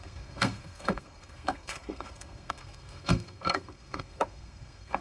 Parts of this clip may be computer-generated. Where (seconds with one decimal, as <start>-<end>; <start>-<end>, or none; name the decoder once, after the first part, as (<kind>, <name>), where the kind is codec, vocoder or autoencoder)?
0.0-5.0 (codec, SNAC)